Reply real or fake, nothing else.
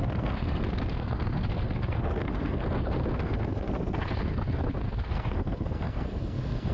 fake